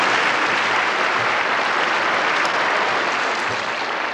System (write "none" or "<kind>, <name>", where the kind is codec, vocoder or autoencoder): none